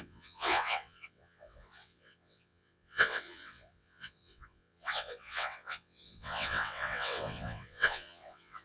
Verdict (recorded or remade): remade